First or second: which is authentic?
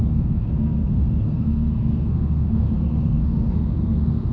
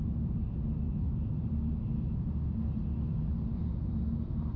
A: second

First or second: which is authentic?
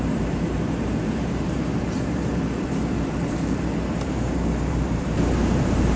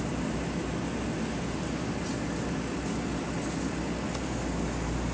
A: second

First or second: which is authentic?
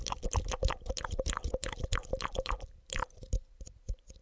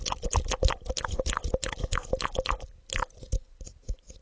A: second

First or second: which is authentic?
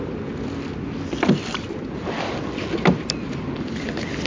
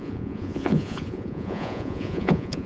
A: first